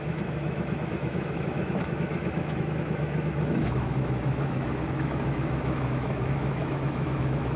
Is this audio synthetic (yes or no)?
yes